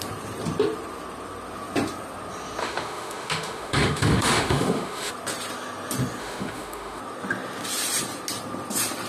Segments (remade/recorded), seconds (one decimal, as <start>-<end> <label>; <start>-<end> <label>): 0.0-2.6 recorded; 2.6-5.1 remade; 5.1-6.2 recorded; 6.2-7.0 remade; 7.0-9.1 recorded

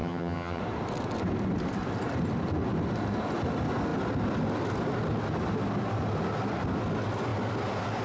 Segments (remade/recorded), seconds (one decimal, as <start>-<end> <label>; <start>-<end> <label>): 0.0-0.6 remade; 0.6-8.0 recorded